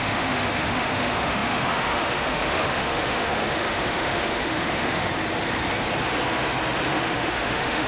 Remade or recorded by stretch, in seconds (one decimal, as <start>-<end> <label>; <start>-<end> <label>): 0.0-5.0 remade; 5.0-6.9 recorded; 6.9-7.9 remade